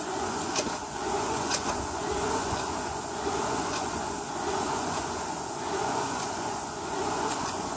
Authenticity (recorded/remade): remade